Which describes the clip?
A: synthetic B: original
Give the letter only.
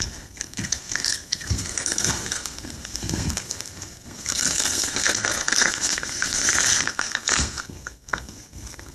A